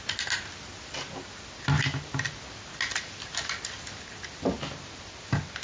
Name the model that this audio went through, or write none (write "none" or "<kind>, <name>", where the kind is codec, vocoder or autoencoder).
none